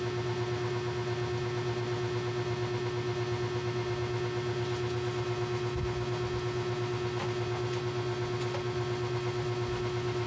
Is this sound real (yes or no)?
yes